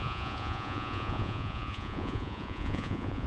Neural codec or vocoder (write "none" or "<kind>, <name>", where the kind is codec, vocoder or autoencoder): vocoder, Vocos